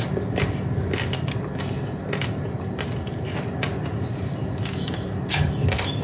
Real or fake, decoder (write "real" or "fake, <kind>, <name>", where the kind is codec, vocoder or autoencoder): real